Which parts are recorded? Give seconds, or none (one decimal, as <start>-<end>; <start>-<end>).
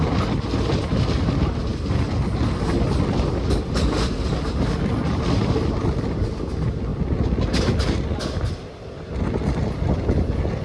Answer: 0.0-10.6